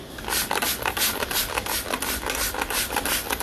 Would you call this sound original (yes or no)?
yes